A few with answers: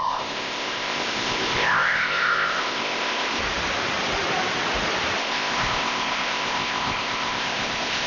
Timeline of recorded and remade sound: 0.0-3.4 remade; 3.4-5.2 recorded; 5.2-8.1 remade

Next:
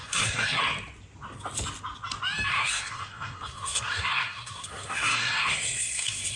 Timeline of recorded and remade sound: 0.0-0.6 remade; 0.6-2.5 recorded; 2.5-6.4 remade